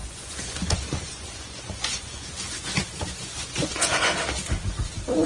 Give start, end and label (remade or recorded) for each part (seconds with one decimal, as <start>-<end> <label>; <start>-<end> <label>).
0.0-4.1 remade; 4.1-5.3 recorded